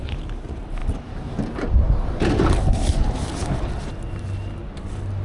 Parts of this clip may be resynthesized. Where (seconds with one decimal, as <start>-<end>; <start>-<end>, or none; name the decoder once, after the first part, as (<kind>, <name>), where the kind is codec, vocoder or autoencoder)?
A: none